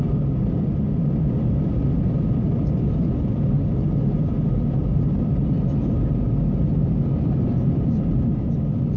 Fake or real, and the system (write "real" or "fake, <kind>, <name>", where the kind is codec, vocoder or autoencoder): real